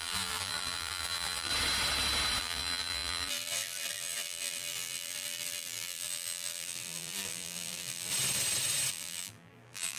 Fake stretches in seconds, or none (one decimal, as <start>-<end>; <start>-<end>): 0.0-1.5; 2.4-8.1; 8.9-10.0